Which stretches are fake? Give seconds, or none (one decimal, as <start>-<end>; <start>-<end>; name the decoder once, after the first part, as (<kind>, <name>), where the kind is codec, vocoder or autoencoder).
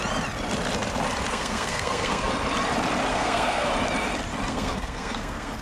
1.3-2.3 (codec, SNAC); 3.1-3.7; 4.5-5.6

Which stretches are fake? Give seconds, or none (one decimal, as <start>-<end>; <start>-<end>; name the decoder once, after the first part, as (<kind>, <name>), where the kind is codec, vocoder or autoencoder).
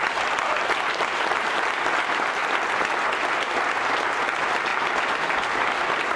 none